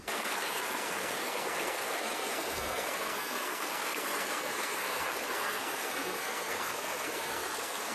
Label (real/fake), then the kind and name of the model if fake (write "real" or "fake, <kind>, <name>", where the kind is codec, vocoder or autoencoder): fake, codec, SNAC